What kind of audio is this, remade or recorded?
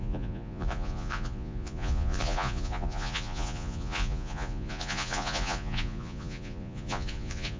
remade